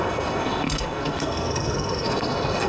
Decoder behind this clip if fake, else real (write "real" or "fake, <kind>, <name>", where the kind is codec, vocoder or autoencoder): fake, codec, SNAC